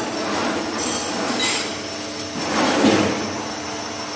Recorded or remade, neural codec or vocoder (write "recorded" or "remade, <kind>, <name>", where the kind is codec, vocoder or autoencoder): recorded